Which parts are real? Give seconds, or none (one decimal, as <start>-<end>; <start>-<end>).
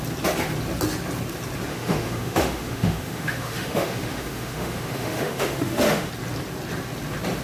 0.0-1.7; 6.1-7.4